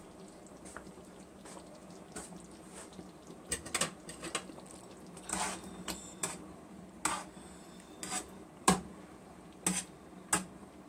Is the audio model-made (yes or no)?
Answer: no